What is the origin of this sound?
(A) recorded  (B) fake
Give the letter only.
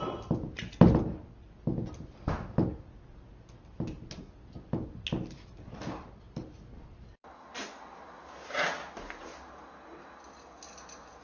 A